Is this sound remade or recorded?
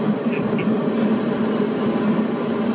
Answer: recorded